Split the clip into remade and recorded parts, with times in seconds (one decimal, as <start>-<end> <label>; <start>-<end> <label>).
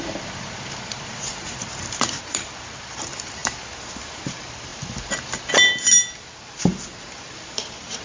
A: 0.0-8.0 remade